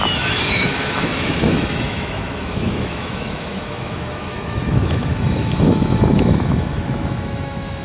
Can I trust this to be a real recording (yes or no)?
no